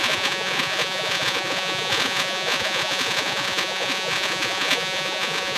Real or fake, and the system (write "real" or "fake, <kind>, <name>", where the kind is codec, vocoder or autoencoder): fake, vocoder, Vocos